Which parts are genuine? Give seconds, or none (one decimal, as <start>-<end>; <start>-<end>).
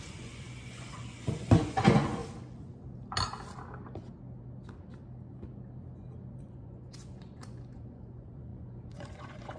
2.2-6.4